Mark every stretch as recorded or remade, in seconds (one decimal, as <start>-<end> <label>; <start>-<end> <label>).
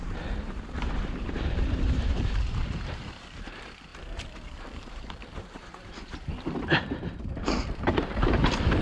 0.0-8.8 remade